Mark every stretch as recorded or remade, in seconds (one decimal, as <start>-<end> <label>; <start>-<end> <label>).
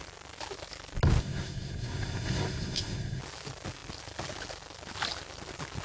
0.0-1.2 recorded; 1.2-3.2 remade; 3.2-5.8 recorded